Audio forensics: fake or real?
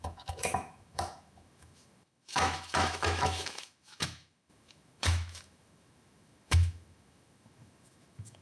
fake